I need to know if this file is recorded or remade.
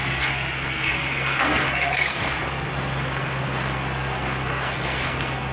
remade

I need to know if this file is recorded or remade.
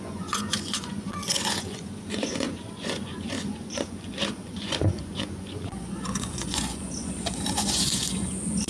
remade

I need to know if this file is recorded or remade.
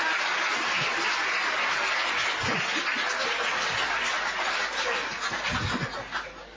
recorded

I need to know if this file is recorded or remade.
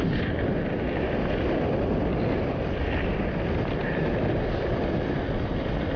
recorded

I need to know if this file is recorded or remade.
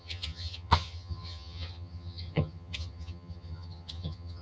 remade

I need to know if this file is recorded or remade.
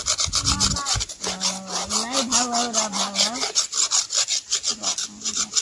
recorded